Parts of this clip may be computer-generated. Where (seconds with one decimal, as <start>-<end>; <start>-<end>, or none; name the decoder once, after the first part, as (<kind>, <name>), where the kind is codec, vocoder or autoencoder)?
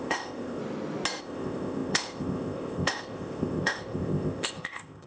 0.0-0.6 (codec, ZipCodec); 1.2-5.1